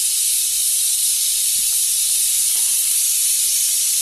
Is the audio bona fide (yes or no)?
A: no